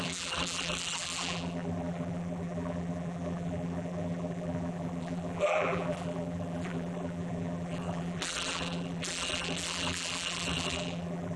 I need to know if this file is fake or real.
fake